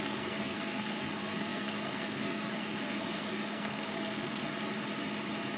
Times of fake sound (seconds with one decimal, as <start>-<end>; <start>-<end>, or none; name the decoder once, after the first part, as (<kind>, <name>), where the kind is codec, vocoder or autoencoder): 0.0-4.5 (codec, SNAC)